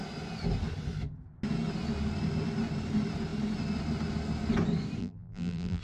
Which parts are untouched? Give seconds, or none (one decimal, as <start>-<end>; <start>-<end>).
0.0-5.0